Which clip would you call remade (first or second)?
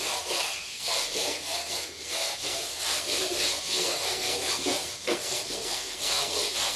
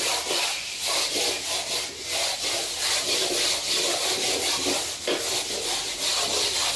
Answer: first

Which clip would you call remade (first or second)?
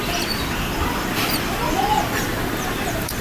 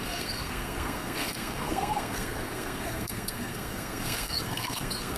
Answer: second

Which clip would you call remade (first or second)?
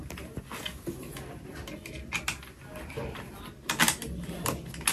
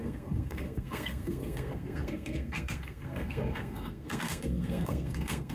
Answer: second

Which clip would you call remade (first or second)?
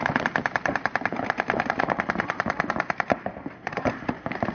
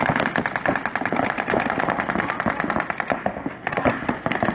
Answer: first